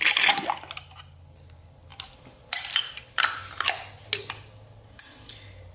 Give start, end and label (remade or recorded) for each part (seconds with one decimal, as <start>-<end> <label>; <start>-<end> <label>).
0.0-1.9 recorded; 1.9-3.6 remade; 3.6-5.7 recorded